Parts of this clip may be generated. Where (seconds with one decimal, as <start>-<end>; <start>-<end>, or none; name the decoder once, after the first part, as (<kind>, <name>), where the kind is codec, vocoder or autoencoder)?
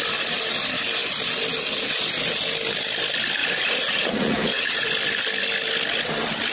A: 3.4-4.9 (vocoder, Vocos)